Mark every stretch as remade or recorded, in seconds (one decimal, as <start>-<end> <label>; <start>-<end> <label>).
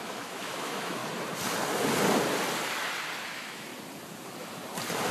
0.0-1.0 remade; 1.0-3.3 recorded; 3.3-3.7 remade; 3.7-5.1 recorded